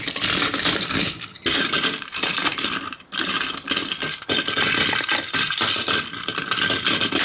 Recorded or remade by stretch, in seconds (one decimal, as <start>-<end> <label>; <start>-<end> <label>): 0.0-2.5 recorded; 2.5-3.2 remade; 3.2-7.2 recorded